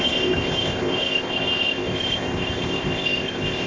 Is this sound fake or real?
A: fake